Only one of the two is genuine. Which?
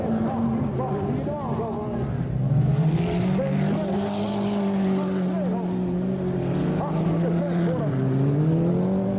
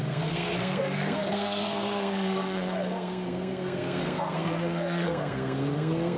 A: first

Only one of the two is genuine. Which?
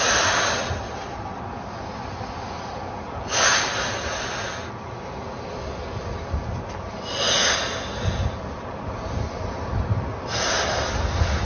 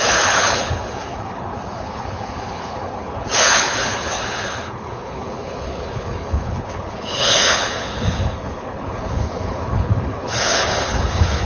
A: first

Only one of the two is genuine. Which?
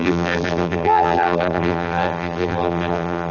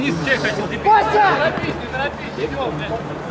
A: second